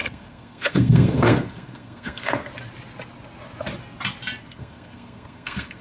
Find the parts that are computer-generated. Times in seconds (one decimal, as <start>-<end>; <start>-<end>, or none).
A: 0.0-2.5; 4.4-5.8